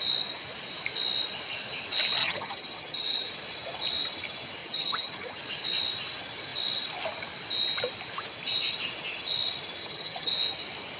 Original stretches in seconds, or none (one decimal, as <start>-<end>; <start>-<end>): 0.0-2.2; 3.3-4.6; 5.4-9.8; 10.3-11.0